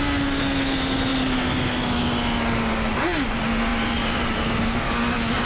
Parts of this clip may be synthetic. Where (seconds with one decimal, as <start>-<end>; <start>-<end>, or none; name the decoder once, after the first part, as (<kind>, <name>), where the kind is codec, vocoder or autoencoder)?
3.7-4.8 (vocoder, BigVGAN v2)